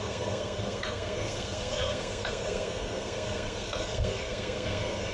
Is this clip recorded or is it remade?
remade